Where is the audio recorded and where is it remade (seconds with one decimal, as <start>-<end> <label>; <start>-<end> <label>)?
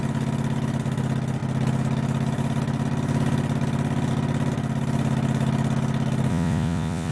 0.0-6.3 recorded; 6.3-7.1 remade